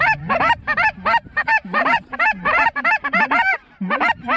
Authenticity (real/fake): fake